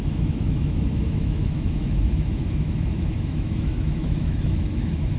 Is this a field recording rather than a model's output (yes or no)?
no